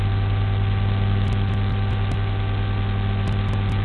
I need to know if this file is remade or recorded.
recorded